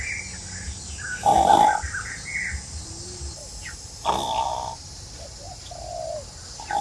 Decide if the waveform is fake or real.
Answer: real